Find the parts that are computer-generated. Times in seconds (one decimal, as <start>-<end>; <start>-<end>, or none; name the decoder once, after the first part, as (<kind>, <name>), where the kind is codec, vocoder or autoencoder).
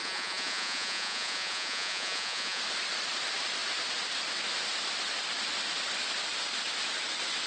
0.0-2.6 (vocoder, Vocos)